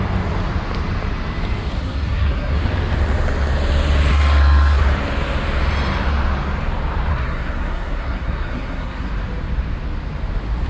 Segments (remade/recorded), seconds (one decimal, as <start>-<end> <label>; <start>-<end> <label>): 0.0-1.7 recorded; 1.7-2.6 remade; 2.6-4.1 recorded; 4.1-4.8 remade; 4.8-7.1 recorded; 7.1-9.1 remade; 9.1-10.7 recorded